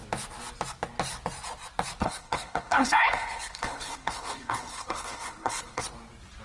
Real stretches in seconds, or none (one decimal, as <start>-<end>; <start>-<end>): 0.0-2.0; 5.8-6.4